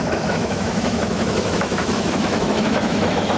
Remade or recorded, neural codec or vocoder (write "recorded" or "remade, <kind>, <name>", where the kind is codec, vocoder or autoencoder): remade, autoencoder, DAC-VAE